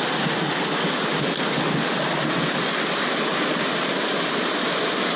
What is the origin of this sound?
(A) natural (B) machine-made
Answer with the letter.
A